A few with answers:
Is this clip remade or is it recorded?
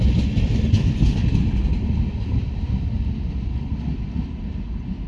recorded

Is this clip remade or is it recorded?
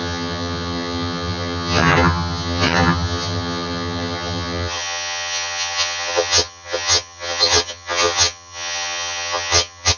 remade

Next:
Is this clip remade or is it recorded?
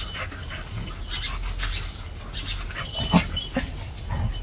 recorded